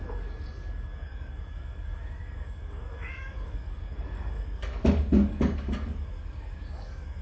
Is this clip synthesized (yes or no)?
yes